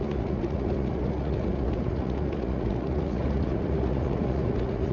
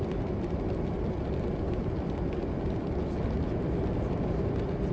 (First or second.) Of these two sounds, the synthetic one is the first